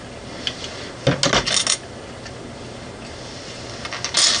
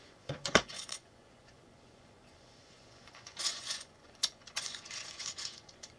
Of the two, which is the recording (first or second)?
first